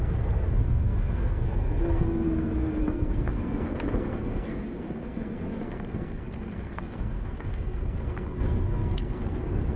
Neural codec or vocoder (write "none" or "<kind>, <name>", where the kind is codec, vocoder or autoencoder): codec, SNAC